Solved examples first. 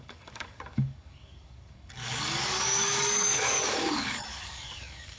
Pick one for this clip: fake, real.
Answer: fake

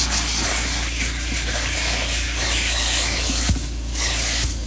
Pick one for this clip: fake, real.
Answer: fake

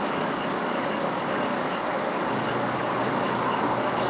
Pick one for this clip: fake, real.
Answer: fake